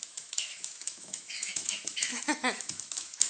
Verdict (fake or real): fake